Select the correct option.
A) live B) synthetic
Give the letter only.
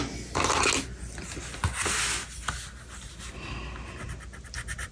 A